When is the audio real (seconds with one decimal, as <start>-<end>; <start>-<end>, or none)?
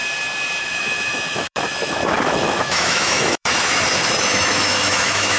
0.0-0.6